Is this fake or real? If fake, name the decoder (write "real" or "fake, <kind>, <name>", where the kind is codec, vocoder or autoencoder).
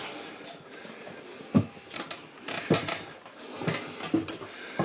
real